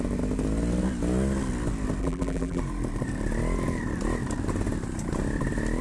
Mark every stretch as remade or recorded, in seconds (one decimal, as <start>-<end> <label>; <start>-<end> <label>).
0.0-2.0 recorded; 2.0-2.6 remade; 2.6-5.8 recorded